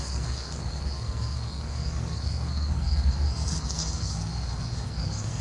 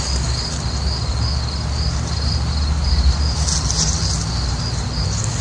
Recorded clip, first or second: second